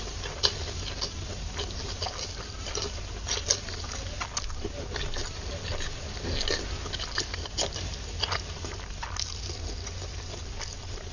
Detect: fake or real real